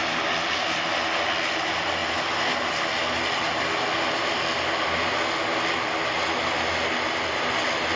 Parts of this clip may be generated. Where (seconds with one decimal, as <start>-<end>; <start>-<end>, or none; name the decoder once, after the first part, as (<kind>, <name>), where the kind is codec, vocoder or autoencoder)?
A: none